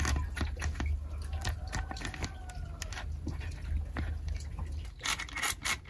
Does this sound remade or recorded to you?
recorded